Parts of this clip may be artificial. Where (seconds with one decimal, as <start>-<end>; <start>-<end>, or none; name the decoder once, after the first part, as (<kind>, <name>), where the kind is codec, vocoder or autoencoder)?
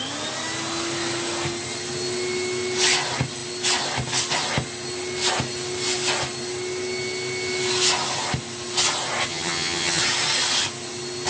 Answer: 9.3-10.0 (vocoder, HiFi-GAN)